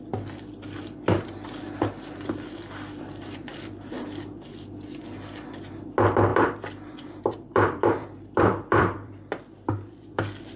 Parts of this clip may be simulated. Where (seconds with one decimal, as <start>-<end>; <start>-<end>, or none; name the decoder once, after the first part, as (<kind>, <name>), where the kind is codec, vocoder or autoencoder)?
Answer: 6.3-10.6 (vocoder, BigVGAN v2)